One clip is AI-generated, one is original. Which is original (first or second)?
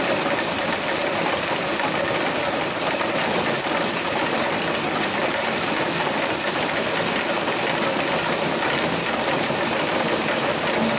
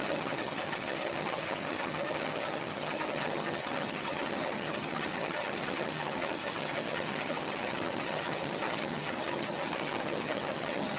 first